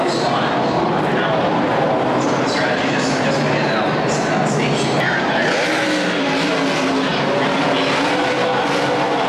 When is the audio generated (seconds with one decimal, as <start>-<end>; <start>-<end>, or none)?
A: none